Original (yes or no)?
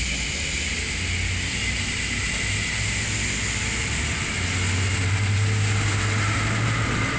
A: yes